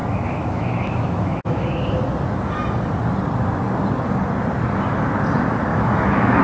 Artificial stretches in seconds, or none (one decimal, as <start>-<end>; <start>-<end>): 0.0-2.0; 5.7-6.4